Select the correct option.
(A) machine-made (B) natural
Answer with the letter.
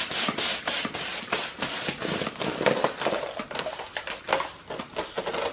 B